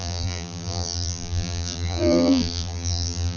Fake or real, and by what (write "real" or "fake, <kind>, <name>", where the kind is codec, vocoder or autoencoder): fake, vocoder, BigVGAN v2